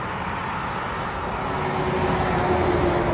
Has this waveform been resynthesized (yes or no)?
no